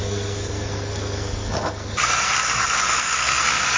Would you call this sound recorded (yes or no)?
no